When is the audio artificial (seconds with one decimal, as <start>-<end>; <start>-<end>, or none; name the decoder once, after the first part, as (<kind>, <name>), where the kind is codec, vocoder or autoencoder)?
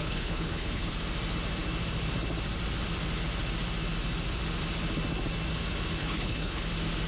0.0-0.9 (codec, HILCodec); 6.0-6.6